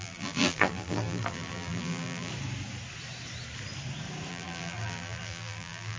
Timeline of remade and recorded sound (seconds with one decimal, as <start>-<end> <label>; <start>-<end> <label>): 0.0-2.3 remade; 2.3-4.3 recorded; 4.3-6.0 remade